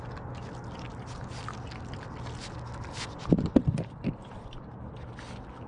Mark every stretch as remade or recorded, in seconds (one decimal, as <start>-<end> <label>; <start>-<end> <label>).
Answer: 0.0-5.7 recorded